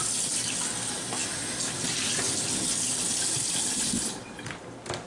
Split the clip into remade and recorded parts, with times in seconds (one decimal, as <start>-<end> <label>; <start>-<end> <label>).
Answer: 0.0-5.1 recorded